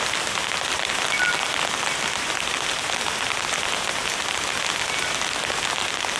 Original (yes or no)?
yes